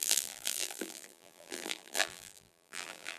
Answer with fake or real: fake